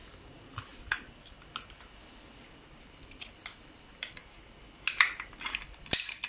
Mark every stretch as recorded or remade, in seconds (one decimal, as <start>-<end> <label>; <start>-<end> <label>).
0.0-2.9 recorded; 2.9-4.2 remade; 4.2-5.8 recorded; 5.8-6.3 remade